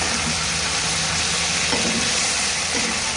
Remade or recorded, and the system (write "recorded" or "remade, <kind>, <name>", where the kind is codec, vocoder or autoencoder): recorded